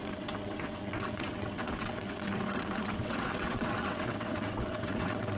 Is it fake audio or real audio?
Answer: fake